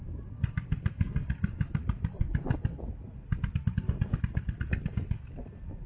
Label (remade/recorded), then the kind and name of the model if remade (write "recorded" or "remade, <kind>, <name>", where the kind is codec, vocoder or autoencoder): recorded